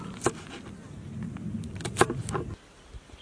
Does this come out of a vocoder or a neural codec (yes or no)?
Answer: no